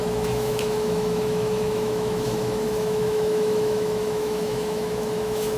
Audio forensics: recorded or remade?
remade